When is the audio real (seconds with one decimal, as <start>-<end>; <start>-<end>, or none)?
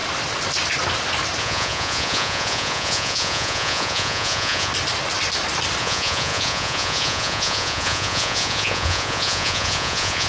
0.0-1.4; 4.7-5.8